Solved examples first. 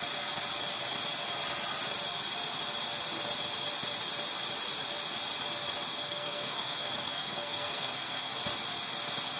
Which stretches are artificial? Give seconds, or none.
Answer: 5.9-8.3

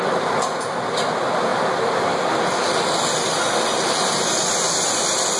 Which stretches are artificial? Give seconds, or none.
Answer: none

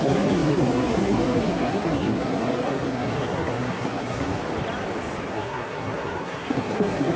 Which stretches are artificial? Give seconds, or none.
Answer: 0.0-4.4; 5.3-7.2

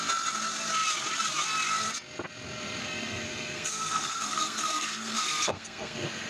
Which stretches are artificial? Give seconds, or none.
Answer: 2.8-6.3

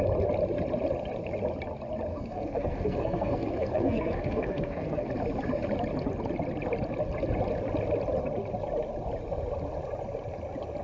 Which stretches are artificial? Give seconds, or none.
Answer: 2.1-5.1